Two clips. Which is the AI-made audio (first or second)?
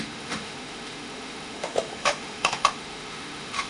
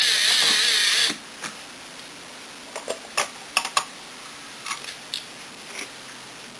first